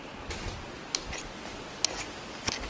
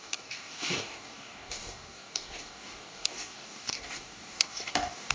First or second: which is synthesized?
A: second